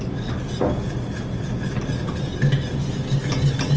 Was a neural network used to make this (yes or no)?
no